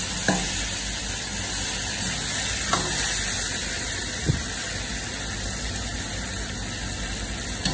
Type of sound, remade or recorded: recorded